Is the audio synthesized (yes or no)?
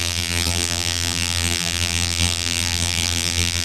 yes